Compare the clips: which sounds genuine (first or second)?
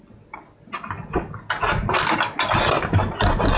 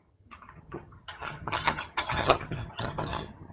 first